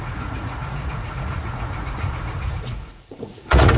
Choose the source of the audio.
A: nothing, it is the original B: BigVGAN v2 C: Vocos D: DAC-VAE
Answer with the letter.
C